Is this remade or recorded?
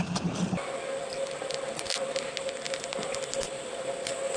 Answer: recorded